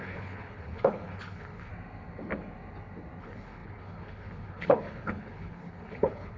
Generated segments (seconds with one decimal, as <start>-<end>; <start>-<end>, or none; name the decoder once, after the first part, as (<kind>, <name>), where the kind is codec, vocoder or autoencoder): 0.0-1.7 (codec, HILCodec); 3.2-6.4